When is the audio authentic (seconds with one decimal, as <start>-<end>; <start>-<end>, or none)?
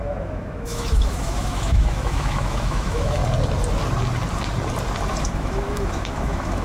3.2-5.2